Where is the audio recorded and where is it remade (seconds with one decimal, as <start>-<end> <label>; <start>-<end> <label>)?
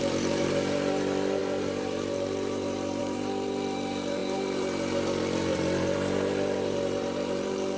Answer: 0.0-7.8 remade